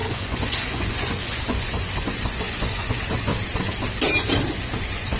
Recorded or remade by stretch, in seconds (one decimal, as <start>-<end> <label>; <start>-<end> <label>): 0.0-3.3 remade; 3.3-4.8 recorded; 4.8-5.2 remade